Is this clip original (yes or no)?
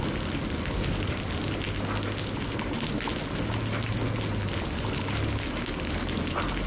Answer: yes